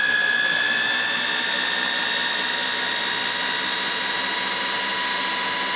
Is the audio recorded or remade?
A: recorded